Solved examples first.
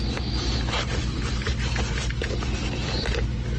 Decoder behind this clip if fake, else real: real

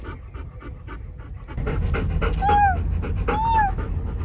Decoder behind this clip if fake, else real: real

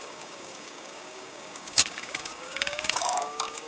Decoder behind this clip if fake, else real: fake, codec, DAC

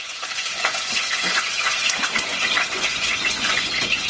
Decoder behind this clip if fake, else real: fake, vocoder, Vocos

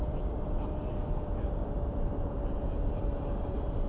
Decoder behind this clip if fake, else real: fake, vocoder, BigVGAN v2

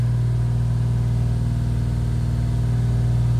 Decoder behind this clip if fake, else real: real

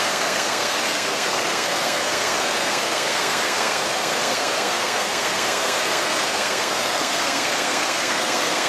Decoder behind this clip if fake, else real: fake, codec, SNAC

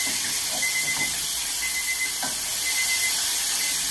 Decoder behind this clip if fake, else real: real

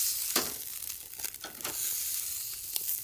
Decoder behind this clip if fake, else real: real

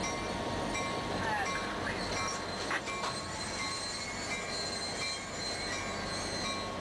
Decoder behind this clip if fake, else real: real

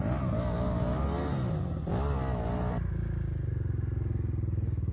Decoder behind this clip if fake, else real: real